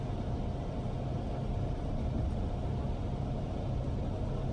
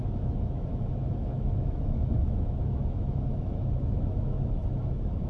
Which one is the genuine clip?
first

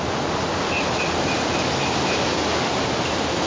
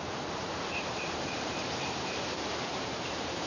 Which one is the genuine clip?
first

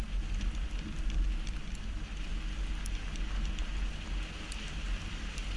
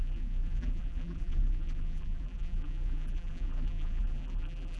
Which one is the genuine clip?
first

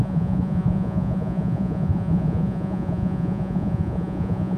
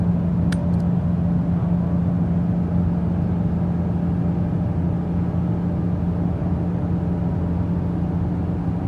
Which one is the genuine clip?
second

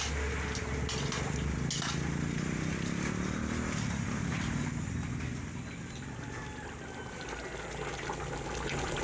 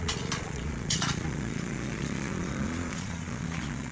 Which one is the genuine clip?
first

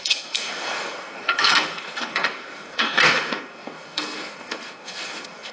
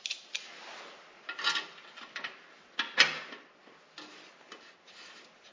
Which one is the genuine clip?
second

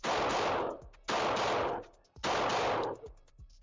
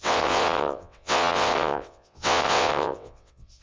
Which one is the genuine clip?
first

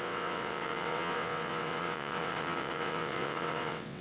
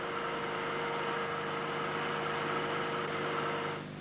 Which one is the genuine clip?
second